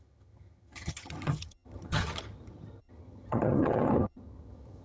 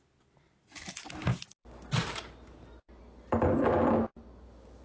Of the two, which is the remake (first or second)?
first